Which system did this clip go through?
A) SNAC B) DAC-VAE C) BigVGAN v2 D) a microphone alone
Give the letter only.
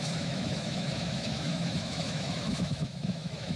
B